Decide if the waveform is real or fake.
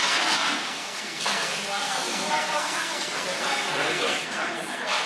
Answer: fake